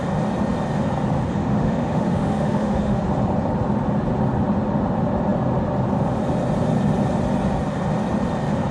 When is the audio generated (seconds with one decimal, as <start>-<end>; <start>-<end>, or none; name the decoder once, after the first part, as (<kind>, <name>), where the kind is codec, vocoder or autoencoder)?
1.3-3.0 (autoencoder, DAC-VAE)